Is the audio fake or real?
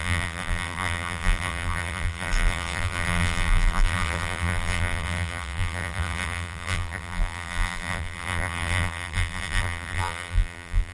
fake